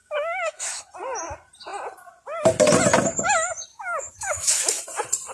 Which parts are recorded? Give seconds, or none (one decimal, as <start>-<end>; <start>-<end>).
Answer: 0.8-3.7; 4.8-5.3